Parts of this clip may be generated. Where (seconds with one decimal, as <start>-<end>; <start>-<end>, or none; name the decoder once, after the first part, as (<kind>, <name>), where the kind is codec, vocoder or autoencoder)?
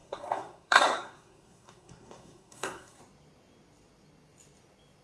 0.0-3.0 (codec, SNAC)